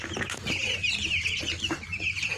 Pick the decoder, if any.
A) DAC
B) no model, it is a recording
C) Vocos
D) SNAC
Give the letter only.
B